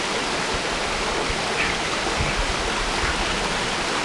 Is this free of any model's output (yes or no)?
yes